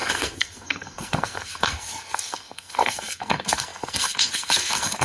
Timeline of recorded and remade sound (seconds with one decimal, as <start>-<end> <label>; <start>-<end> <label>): 0.0-5.0 remade